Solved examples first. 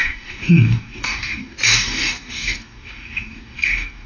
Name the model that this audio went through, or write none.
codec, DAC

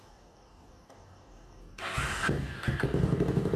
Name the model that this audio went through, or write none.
codec, DAC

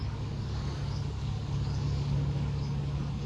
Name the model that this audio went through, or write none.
codec, DAC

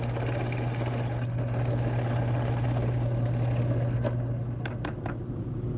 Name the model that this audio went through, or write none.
none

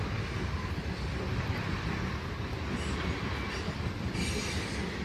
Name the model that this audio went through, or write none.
none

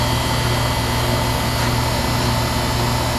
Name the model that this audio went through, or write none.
none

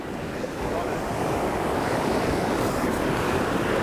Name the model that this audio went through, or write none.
codec, DAC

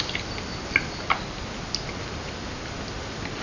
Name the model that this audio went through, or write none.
none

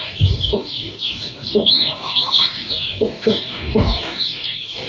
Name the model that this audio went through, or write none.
codec, DAC